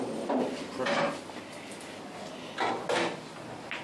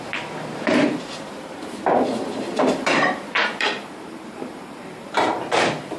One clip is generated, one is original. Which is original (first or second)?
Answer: first